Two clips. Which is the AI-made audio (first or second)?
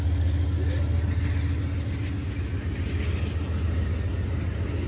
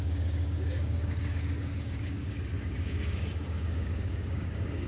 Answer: second